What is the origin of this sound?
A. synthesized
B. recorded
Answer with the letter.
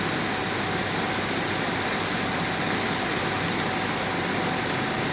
B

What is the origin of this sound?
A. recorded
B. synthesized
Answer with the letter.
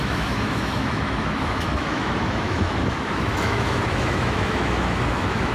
B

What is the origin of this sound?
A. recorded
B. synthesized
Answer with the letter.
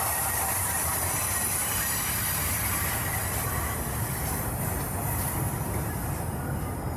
A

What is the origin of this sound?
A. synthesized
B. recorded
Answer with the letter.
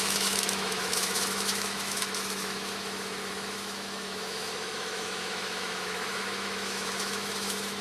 A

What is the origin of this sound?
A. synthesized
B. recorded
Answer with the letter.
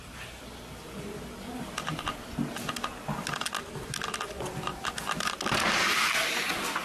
B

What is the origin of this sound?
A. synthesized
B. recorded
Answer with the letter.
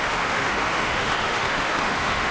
A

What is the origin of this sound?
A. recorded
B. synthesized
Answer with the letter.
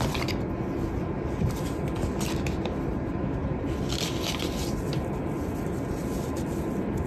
A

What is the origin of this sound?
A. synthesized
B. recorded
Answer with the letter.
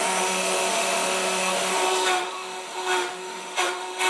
A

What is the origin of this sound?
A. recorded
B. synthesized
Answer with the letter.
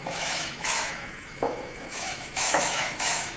B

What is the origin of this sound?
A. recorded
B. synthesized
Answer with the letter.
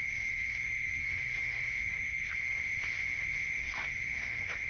B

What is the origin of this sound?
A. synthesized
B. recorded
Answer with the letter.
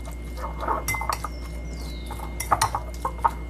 B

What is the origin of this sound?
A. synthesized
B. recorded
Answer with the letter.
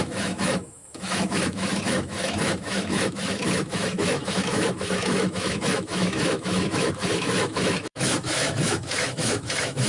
A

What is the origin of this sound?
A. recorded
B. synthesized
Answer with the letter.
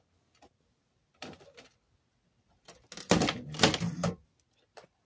A